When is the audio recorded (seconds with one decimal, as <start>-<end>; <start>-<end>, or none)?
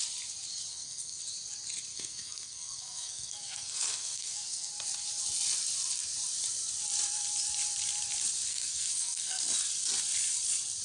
0.0-0.7; 1.2-1.9; 4.7-8.5; 9.4-10.8